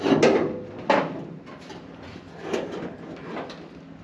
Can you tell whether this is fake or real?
real